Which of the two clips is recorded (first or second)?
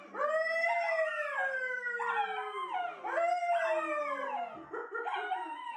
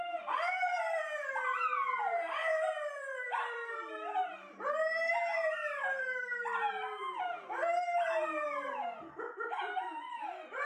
first